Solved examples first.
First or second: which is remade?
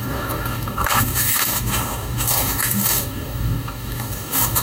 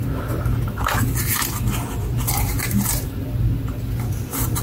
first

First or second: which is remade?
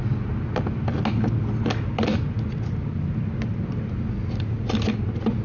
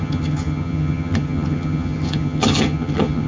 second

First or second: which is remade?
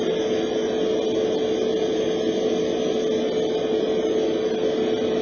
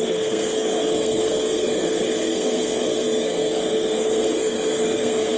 second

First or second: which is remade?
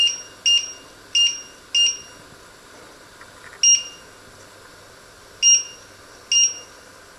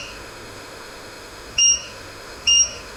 second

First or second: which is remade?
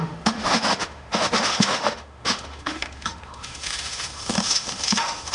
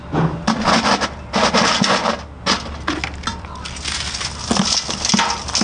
first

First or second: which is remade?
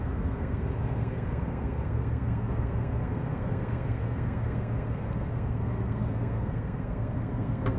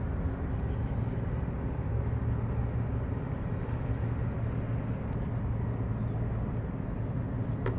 first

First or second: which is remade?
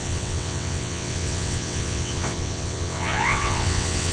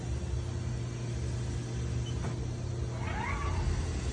first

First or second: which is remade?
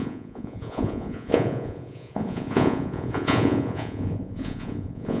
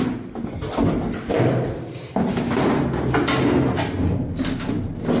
first